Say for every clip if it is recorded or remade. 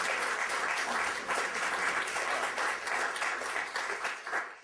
recorded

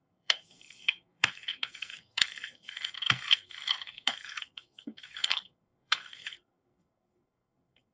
remade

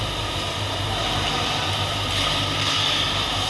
recorded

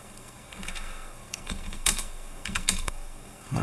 remade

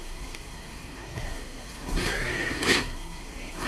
remade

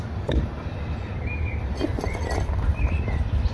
recorded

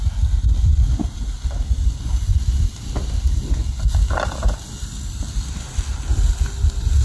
recorded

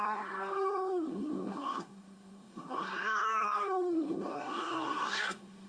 remade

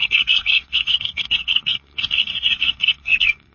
remade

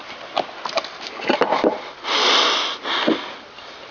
recorded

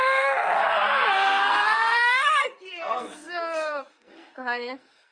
remade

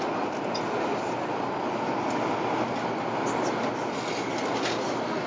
recorded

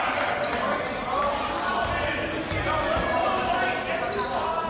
recorded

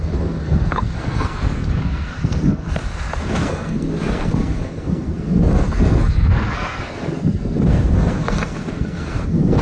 remade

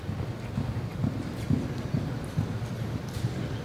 recorded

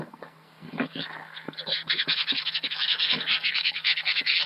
remade